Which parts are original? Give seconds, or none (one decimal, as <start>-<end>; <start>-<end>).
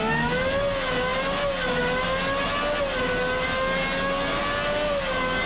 0.0-5.5